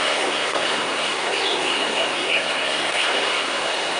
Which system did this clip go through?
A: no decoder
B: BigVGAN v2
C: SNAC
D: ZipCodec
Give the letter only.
C